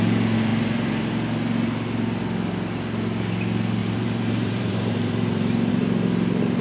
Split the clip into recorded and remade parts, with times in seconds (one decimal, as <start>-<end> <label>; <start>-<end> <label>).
0.0-0.5 recorded; 0.5-1.1 remade; 1.1-3.8 recorded; 3.8-5.7 remade; 5.7-6.6 recorded